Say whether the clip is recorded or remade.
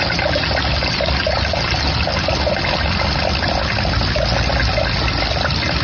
recorded